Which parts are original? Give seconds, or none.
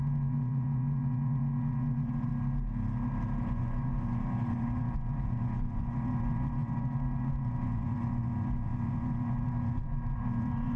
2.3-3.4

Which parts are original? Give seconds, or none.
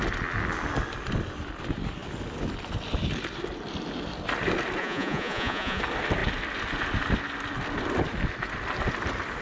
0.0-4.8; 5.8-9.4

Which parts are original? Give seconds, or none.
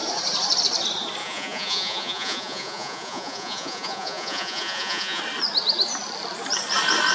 0.0-1.2; 5.2-7.1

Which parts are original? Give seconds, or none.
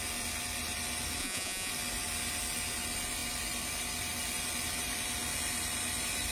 0.0-1.2; 1.7-6.3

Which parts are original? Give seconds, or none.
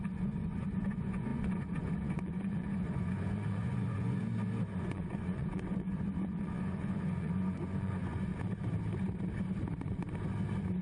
4.2-4.7; 8.3-10.8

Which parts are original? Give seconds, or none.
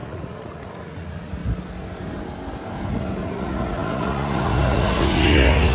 1.4-2.9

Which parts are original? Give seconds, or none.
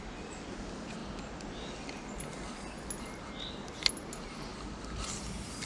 0.0-5.7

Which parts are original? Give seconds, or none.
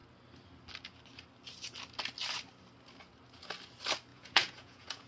0.0-4.1